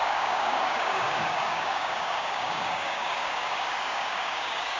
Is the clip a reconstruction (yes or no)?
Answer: yes